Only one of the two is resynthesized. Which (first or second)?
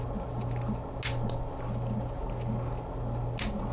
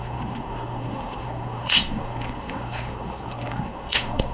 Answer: second